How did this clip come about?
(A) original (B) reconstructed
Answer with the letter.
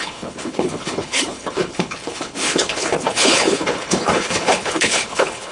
B